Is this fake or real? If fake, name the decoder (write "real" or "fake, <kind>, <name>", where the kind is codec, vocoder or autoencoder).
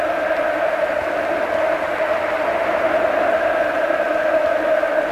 real